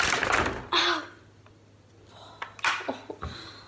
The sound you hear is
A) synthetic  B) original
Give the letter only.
B